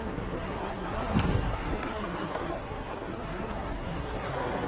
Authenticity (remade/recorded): remade